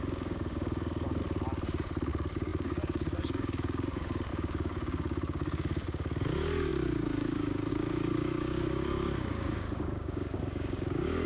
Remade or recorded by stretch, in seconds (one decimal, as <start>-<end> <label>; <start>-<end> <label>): 0.0-1.2 remade; 1.2-2.1 recorded; 2.1-11.3 remade